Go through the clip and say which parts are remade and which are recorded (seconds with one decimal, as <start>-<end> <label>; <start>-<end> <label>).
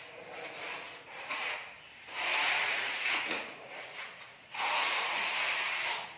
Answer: 0.0-1.4 remade; 1.4-2.6 recorded; 2.6-5.3 remade; 5.3-6.2 recorded